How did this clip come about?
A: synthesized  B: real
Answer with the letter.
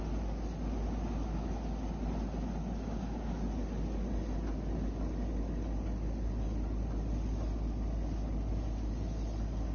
B